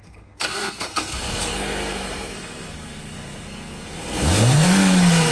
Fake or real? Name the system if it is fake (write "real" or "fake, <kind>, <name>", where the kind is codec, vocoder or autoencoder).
fake, codec, SNAC